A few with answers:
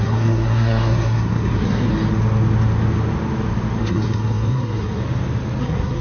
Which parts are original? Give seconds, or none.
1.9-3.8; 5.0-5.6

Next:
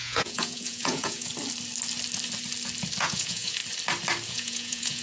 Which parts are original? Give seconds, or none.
1.3-3.0; 3.6-4.3